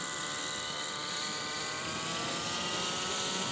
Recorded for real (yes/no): yes